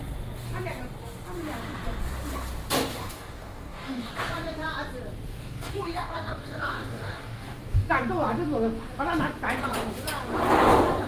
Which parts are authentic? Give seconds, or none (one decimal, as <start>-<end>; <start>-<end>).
0.0-3.0; 4.1-5.3; 7.9-11.1